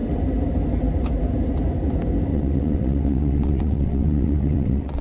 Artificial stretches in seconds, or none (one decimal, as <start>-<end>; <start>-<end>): 2.3-5.0